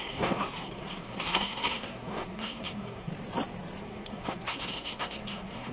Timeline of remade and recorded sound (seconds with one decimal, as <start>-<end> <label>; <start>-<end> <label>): 0.0-3.1 remade; 3.1-3.8 recorded; 3.8-5.7 remade